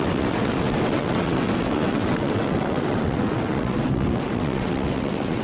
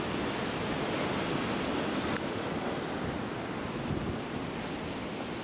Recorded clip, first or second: second